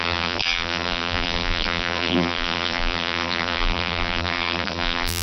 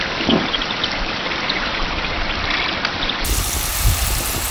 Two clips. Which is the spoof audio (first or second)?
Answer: first